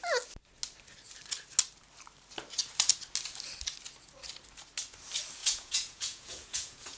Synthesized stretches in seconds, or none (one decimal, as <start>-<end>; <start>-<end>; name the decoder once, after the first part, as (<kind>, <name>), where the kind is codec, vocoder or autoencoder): 5.4-7.0 (vocoder, Vocos)